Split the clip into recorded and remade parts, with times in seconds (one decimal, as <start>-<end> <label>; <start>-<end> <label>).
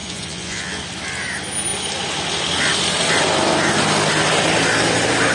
0.0-0.8 remade; 0.8-5.3 recorded